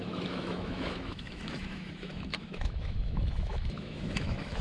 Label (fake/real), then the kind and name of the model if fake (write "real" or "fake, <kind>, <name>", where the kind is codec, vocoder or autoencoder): fake, autoencoder, DAC-VAE